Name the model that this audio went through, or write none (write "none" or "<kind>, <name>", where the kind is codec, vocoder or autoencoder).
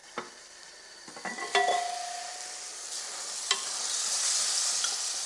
none